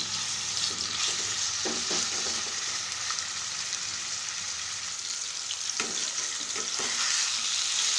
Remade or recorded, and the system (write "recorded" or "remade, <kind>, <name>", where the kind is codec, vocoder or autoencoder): recorded